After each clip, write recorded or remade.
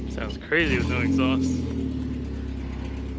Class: recorded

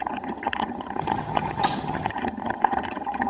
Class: remade